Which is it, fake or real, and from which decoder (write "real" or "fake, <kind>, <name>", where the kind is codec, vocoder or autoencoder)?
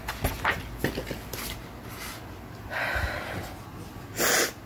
real